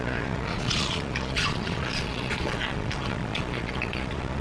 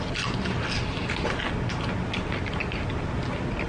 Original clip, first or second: second